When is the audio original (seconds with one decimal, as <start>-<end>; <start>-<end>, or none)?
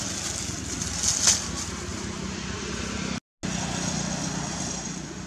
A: 0.0-1.9; 2.7-5.3